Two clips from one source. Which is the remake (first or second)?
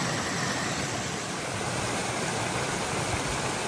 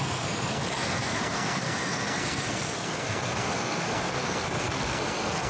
second